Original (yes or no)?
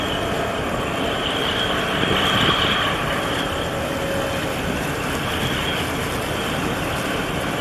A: yes